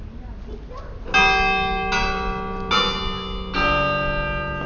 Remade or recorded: recorded